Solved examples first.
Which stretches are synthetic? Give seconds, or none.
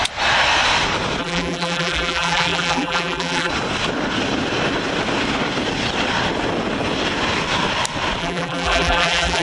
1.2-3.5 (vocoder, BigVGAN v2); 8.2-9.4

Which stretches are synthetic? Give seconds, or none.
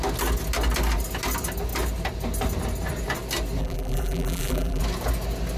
3.6-4.8 (vocoder, BigVGAN v2)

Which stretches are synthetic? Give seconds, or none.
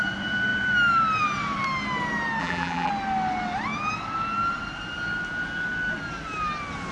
2.4-2.9 (vocoder, BigVGAN v2)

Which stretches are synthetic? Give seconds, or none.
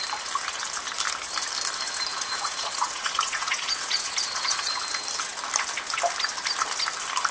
2.1-4.8 (vocoder, Vocos)